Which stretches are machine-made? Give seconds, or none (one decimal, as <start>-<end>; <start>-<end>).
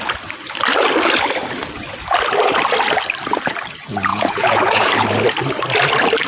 4.1-4.9